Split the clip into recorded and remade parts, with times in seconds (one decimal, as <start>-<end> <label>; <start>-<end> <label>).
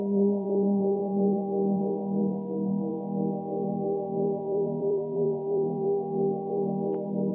0.0-7.3 remade